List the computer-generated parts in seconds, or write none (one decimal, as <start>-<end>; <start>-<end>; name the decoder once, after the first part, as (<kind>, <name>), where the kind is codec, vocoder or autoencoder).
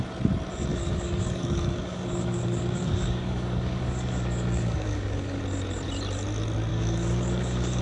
0.7-5.4 (codec, DAC); 6.7-7.8